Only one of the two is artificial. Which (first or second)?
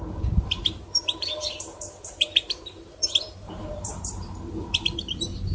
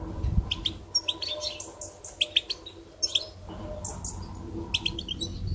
first